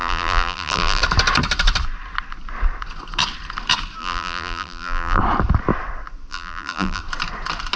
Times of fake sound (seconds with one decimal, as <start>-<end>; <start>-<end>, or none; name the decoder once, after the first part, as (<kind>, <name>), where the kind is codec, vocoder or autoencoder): 0.0-1.0 (vocoder, BigVGAN v2); 4.0-5.2; 6.3-7.0